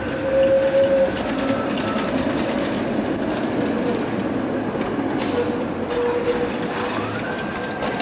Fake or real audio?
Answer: real